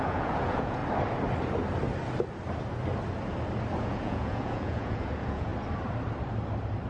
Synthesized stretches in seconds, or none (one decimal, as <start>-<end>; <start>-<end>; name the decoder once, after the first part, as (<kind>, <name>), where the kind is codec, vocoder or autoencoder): 0.0-0.8 (vocoder, Vocos); 3.8-5.5